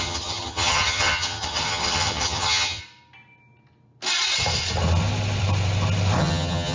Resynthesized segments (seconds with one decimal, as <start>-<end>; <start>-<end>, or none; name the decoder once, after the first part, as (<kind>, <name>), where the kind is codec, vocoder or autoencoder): 0.0-2.8 (vocoder, HiFi-GAN); 6.2-6.7